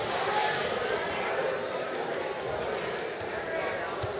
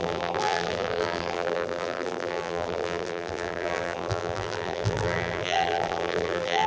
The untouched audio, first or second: first